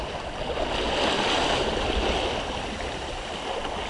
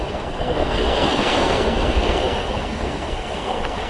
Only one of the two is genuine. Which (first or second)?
first